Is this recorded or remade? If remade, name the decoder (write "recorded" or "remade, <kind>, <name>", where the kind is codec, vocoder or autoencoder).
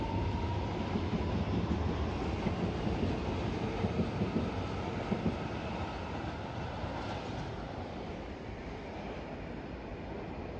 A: recorded